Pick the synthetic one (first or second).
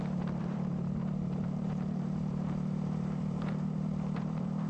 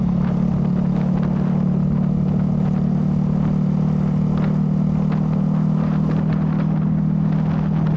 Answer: first